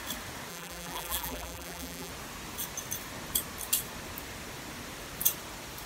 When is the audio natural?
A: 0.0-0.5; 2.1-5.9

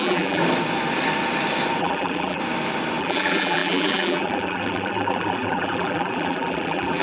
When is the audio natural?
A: 0.4-1.8; 2.4-3.0

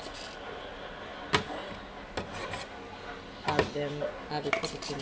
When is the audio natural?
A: 0.0-5.0

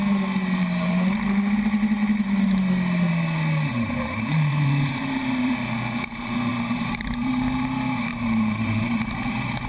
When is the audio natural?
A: 0.0-3.7; 5.5-6.5; 7.3-8.1

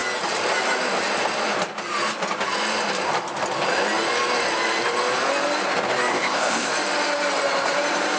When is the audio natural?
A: 0.0-6.1; 6.7-8.2

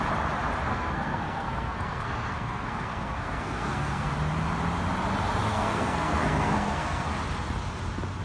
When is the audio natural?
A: 0.0-0.7; 4.1-5.5; 7.1-8.2

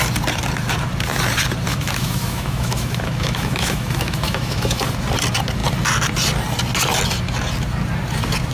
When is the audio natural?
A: 0.0-1.7; 4.8-8.5

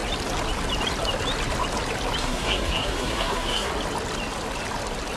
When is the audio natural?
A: 0.0-2.2; 3.7-5.2